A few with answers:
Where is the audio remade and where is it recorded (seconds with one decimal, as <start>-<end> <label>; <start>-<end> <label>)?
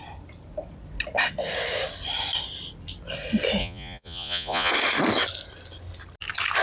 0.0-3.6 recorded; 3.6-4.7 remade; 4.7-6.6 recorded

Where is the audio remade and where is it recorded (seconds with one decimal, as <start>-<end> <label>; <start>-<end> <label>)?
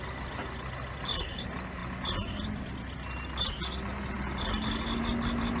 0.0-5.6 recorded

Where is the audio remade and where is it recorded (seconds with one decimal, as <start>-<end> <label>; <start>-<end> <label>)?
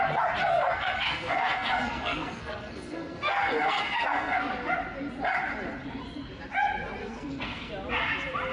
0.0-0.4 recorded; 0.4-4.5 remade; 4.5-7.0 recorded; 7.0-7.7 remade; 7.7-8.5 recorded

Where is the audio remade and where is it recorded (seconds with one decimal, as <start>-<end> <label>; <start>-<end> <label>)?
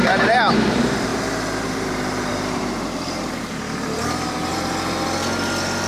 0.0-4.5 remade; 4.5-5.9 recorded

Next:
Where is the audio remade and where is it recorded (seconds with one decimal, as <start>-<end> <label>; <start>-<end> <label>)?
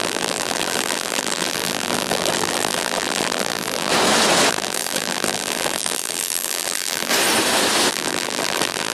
0.0-3.9 remade; 3.9-4.5 recorded; 4.5-7.1 remade; 7.1-7.9 recorded; 7.9-8.9 remade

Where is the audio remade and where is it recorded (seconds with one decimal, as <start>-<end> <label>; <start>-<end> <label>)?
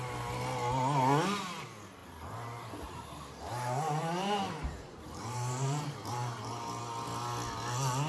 0.0-2.0 recorded; 2.0-6.8 remade; 6.8-8.1 recorded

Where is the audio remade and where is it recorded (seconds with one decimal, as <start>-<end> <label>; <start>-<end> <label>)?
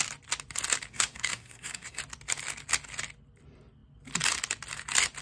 0.0-0.9 recorded; 0.9-2.0 remade; 2.0-5.2 recorded